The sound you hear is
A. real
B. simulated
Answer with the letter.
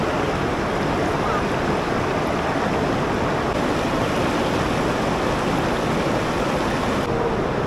A